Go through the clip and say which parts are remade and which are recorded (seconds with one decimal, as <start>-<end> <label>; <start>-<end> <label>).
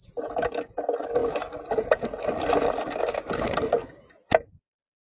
0.0-5.1 recorded